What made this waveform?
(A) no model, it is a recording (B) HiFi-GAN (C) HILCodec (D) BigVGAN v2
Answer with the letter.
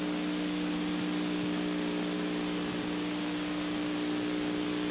A